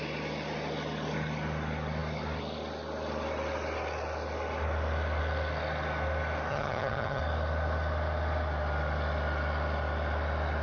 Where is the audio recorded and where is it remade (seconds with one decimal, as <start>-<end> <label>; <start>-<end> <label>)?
0.0-6.5 recorded; 6.5-7.2 remade; 7.2-10.6 recorded